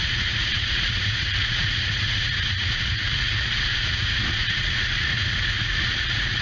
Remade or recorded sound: remade